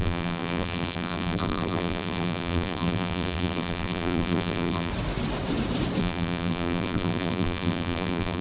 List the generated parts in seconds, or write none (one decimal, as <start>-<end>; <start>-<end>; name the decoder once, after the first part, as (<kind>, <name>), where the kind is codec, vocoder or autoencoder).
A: 0.0-4.9 (vocoder, BigVGAN v2); 6.0-8.4